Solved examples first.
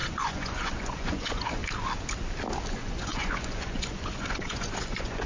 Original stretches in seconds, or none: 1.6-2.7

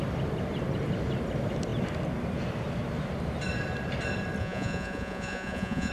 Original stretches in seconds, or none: 0.0-4.4

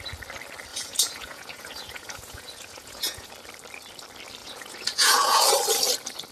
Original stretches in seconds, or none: 0.0-0.7; 3.3-4.4; 5.5-6.3